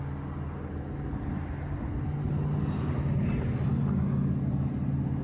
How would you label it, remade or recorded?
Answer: recorded